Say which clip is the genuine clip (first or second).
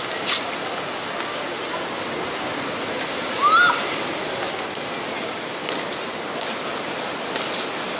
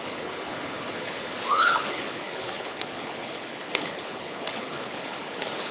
first